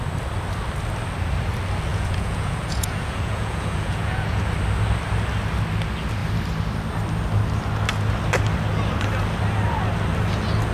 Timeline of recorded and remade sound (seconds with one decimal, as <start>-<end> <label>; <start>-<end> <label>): 0.0-1.9 recorded; 1.9-4.4 remade; 4.4-10.7 recorded